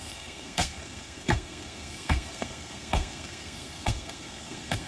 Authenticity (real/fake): fake